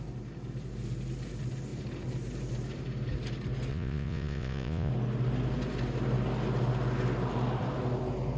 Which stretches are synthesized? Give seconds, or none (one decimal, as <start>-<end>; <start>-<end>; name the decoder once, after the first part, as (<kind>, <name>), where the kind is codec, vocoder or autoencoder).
3.7-4.9 (vocoder, Vocos)

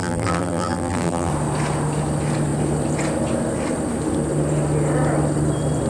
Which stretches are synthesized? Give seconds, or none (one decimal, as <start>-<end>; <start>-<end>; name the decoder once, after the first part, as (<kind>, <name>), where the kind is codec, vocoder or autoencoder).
0.0-1.3 (vocoder, BigVGAN v2)

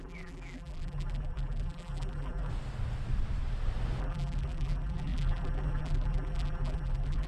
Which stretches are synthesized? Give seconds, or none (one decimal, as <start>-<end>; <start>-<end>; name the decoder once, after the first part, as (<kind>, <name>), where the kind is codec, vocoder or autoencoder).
0.0-2.5 (vocoder, BigVGAN v2); 4.0-7.3

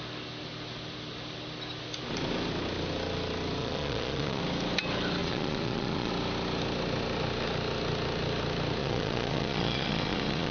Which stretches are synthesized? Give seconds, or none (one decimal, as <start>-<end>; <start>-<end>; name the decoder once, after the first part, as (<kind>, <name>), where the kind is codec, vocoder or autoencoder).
3.6-4.4 (vocoder, Vocos); 5.2-6.1; 8.8-10.5

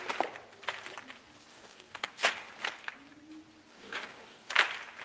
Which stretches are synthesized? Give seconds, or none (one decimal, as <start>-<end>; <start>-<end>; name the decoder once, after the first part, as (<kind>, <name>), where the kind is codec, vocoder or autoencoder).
1.5-2.3 (codec, DAC); 3.7-4.5

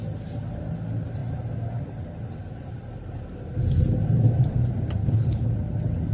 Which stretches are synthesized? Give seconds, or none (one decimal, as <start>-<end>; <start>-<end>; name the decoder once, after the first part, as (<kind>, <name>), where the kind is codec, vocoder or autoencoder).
5.0-5.5 (codec, HILCodec)

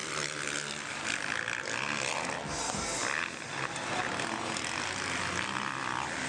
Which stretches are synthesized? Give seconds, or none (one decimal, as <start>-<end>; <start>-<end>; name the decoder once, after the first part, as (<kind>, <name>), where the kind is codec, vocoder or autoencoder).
none

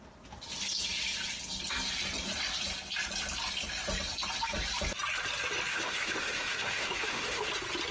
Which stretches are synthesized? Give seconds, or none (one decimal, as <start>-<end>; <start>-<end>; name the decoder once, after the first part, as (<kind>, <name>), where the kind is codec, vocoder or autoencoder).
5.7-7.5 (autoencoder, DAC-VAE)